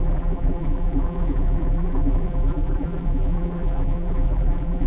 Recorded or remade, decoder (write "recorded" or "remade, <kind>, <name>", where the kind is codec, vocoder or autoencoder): remade, vocoder, BigVGAN v2